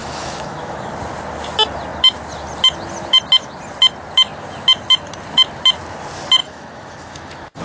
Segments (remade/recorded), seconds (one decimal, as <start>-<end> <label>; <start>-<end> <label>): 0.0-0.9 remade; 0.9-6.4 recorded; 6.4-7.6 remade